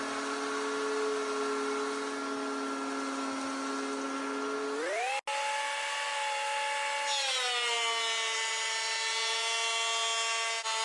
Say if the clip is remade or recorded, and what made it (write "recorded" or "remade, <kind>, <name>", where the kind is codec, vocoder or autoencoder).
recorded